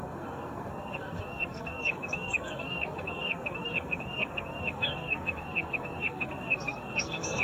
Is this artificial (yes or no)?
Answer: yes